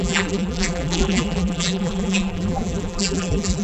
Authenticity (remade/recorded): remade